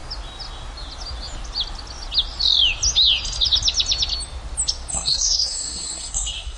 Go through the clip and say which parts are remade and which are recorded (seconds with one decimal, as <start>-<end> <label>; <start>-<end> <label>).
0.0-4.9 recorded; 4.9-6.6 remade